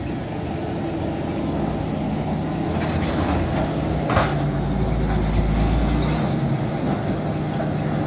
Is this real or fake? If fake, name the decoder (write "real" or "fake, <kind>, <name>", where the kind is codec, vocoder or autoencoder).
real